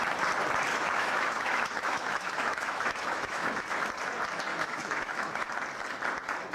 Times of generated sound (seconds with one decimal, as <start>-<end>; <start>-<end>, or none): 0.7-3.8; 4.5-5.5